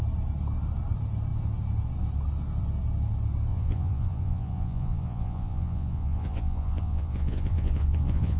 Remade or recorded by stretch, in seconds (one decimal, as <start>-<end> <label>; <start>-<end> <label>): 0.0-3.5 recorded; 3.5-8.4 remade